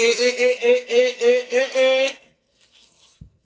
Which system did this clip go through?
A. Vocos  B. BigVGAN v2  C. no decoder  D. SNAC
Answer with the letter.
D